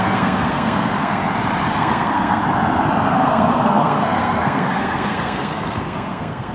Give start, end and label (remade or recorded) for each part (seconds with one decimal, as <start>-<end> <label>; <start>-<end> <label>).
0.0-1.2 remade; 1.2-1.8 recorded; 1.8-2.4 remade; 2.4-3.1 recorded; 3.1-6.5 remade